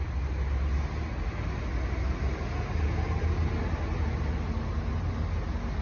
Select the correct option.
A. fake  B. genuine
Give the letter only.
B